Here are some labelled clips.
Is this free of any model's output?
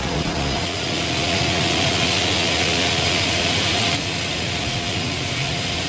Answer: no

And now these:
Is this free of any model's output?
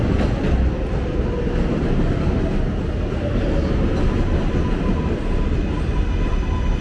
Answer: yes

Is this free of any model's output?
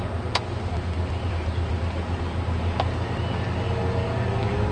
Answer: yes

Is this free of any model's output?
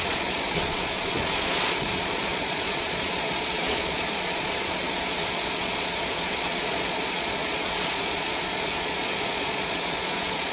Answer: no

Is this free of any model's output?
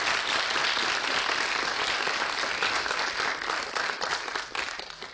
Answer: yes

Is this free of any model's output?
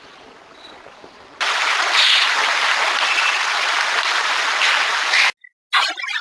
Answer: yes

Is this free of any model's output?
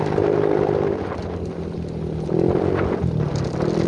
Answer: yes